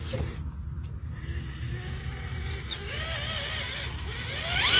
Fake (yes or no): no